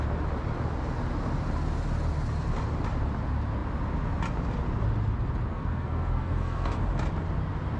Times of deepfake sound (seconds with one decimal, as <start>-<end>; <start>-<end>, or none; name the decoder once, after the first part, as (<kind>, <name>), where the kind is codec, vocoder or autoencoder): 5.5-6.8 (codec, SNAC)